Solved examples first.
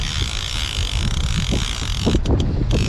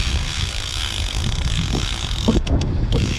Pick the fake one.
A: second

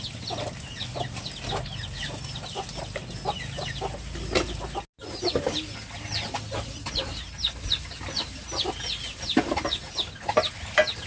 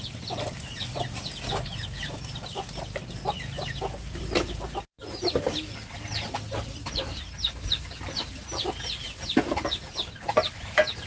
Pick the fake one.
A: second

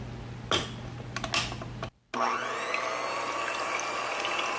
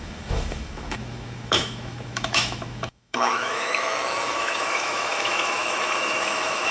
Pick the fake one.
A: second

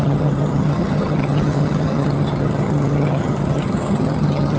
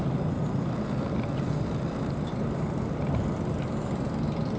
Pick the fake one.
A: first